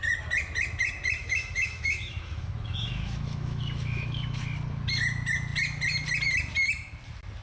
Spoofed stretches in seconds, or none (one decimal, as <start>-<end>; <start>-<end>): 1.2-4.4